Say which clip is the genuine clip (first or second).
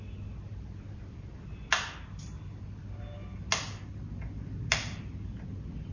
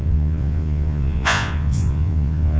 first